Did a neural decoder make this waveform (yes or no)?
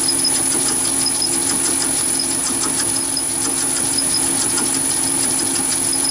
no